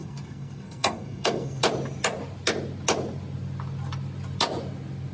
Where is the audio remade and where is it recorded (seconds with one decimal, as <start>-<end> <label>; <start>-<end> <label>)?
0.0-1.6 remade; 1.6-5.1 recorded